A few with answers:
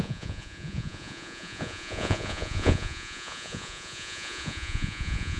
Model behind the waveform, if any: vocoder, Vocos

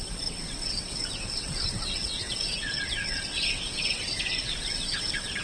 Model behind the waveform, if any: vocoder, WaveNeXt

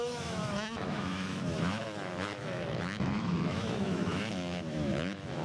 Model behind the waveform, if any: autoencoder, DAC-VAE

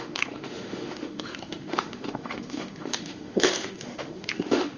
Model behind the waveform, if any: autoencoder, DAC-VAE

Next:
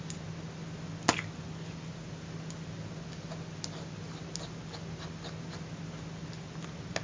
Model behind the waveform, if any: none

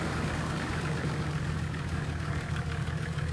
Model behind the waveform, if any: codec, DAC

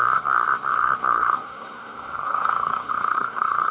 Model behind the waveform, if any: codec, SNAC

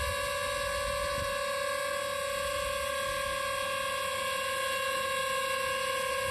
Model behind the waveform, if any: none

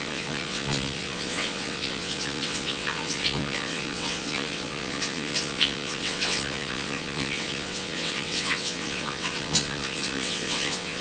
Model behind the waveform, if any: vocoder, WaveNeXt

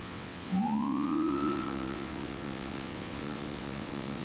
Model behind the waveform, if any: vocoder, WaveNeXt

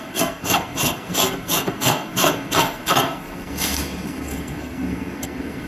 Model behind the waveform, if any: codec, SNAC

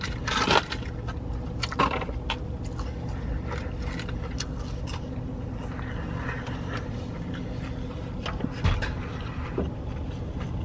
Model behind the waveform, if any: none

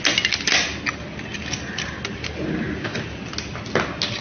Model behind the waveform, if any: none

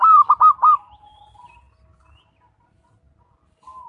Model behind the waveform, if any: none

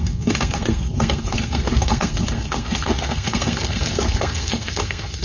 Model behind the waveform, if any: codec, SNAC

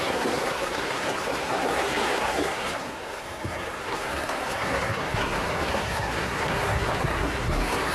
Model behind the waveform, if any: codec, SNAC